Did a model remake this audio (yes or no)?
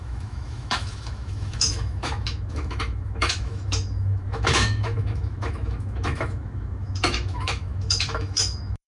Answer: yes